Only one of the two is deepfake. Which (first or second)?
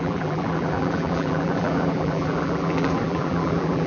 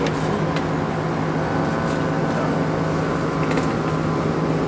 first